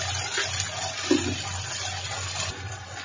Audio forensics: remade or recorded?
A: recorded